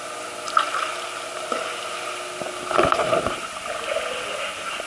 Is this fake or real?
real